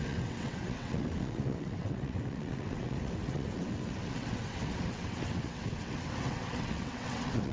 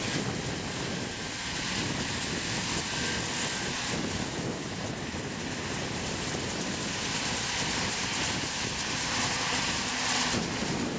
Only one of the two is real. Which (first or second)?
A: second